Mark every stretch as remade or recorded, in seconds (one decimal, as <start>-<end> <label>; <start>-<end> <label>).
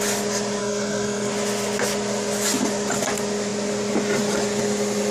0.0-0.6 recorded; 0.6-1.3 remade; 1.3-5.1 recorded